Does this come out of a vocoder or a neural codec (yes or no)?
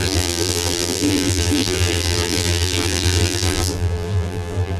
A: yes